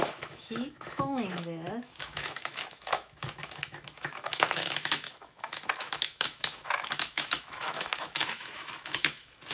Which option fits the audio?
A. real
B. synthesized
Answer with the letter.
B